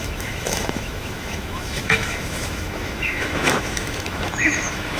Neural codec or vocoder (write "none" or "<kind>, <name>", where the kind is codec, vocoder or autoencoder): autoencoder, DAC-VAE